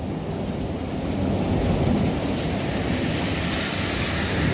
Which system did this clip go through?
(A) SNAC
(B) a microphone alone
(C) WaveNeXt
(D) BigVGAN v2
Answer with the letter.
B